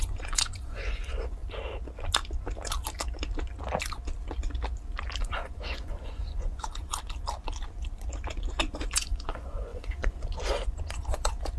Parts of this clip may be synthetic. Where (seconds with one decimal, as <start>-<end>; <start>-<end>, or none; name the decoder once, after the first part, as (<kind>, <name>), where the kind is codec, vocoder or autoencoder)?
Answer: 0.0-1.4 (vocoder, Vocos); 5.2-6.9; 8.5-11.6